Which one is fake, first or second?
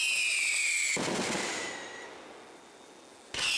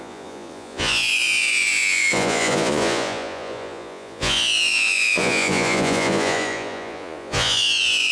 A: second